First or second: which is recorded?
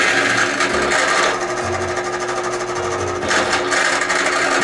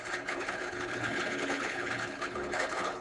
first